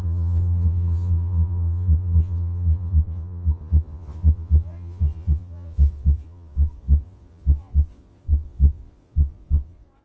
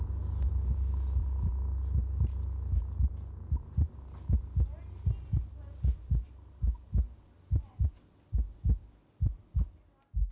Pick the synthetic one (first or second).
first